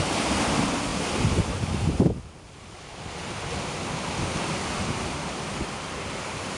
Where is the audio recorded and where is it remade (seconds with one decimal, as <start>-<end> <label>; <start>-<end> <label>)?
0.0-0.9 remade; 0.9-4.8 recorded; 4.8-6.6 remade